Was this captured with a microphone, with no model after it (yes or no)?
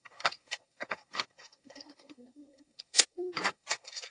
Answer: no